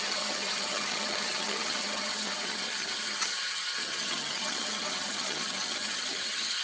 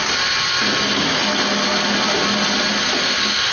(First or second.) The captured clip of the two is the second